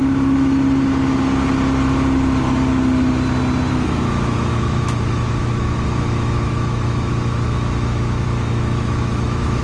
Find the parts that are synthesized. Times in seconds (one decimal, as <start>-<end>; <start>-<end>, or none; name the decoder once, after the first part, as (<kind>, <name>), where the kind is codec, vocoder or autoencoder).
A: 3.7-9.6 (autoencoder, DAC-VAE)